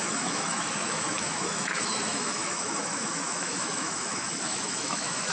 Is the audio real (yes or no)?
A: no